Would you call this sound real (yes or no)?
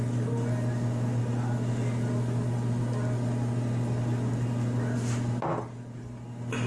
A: yes